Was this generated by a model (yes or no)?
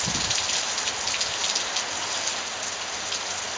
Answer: no